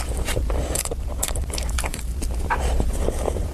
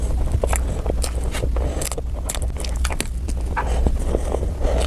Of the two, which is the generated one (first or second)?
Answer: first